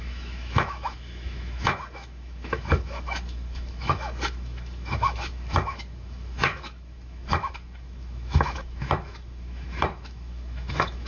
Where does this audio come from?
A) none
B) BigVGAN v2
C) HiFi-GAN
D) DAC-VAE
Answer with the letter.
D